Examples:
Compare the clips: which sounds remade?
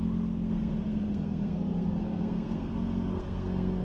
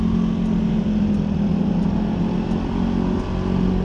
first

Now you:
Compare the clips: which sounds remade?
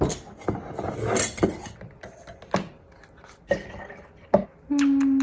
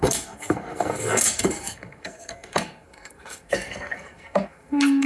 second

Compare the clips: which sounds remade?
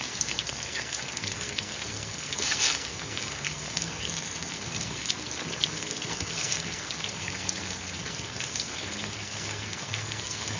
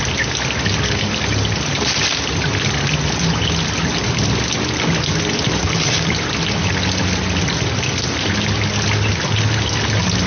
first